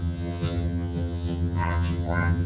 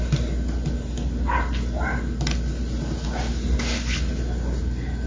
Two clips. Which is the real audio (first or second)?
second